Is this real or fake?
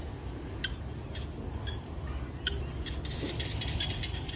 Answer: real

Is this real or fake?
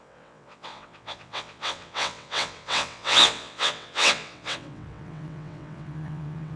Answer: fake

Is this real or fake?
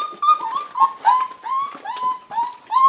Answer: real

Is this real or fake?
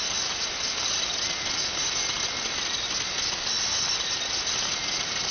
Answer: real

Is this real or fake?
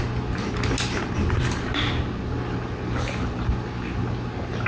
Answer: real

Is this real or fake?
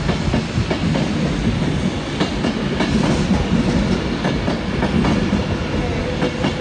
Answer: real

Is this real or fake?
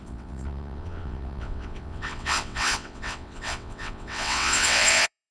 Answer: fake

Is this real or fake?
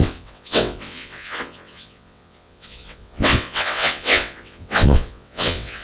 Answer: fake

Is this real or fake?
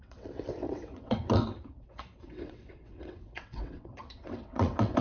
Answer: fake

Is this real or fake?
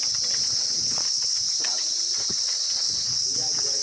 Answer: fake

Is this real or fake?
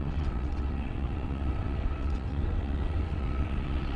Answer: fake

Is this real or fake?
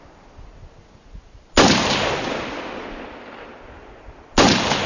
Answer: real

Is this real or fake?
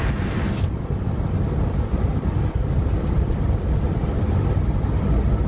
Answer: real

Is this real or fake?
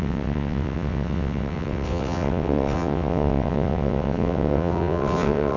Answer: fake